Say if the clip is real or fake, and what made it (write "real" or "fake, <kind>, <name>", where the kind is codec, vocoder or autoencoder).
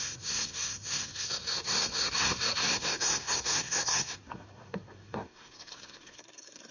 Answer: fake, codec, SNAC